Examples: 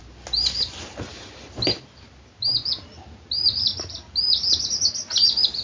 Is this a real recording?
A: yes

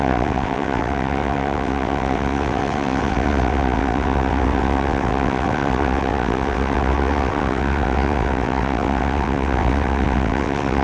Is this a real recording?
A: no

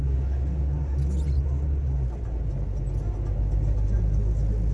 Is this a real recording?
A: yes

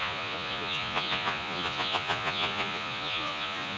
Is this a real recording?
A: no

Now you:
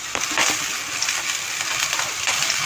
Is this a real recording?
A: yes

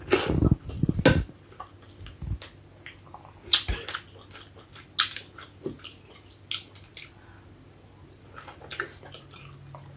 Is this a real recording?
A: yes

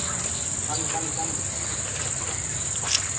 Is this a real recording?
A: yes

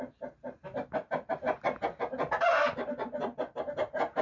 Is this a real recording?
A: yes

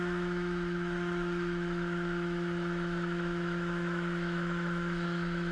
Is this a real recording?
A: no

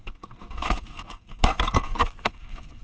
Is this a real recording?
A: no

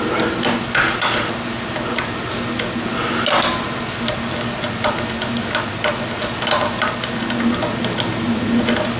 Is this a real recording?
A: yes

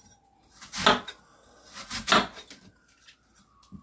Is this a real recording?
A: yes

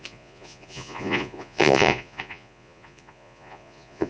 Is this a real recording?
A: no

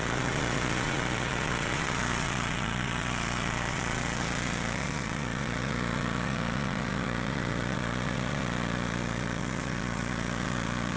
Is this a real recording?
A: no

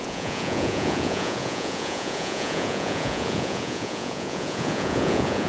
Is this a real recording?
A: no